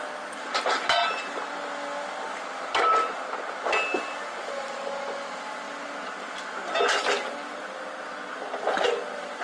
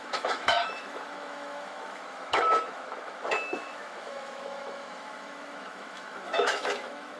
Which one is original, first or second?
first